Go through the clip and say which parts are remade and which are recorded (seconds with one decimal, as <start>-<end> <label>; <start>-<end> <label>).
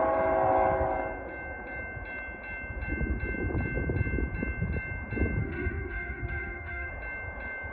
0.0-5.4 recorded; 5.4-6.9 remade; 6.9-7.7 recorded